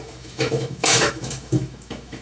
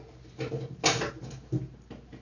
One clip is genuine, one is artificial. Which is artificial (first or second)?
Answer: first